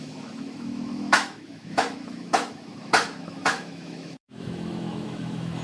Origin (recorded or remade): remade